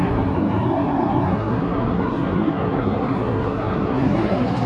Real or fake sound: fake